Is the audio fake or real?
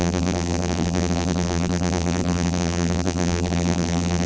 fake